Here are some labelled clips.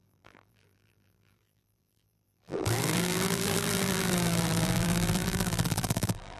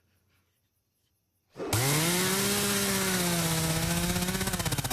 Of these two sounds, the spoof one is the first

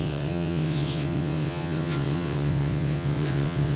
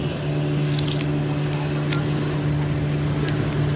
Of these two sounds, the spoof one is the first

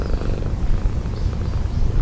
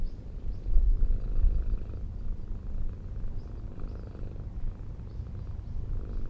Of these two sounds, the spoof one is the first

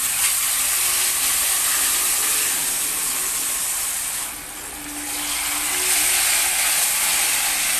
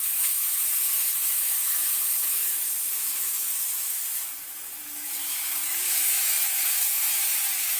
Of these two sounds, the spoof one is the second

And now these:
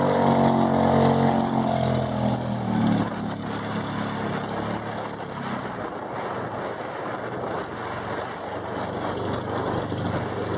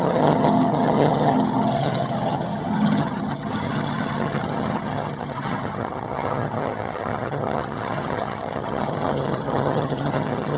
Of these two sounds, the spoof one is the second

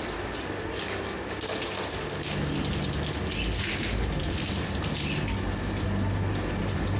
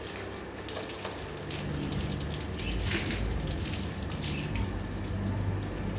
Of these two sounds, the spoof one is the second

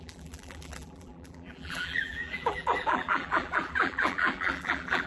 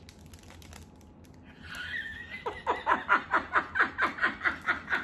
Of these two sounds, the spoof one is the first